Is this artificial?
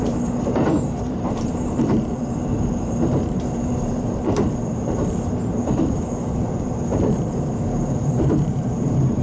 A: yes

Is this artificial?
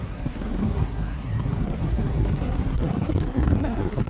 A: yes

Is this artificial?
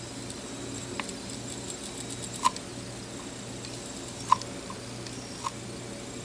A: no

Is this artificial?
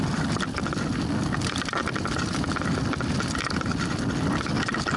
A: no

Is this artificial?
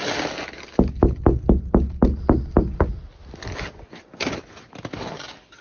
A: no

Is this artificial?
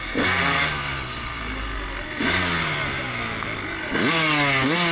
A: no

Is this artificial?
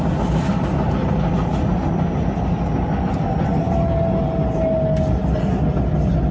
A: no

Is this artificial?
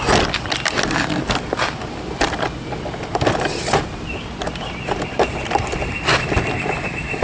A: no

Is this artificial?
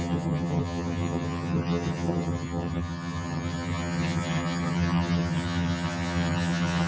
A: yes